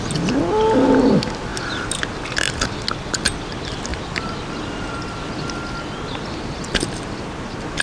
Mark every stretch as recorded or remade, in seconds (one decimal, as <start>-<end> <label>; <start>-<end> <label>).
0.0-7.8 recorded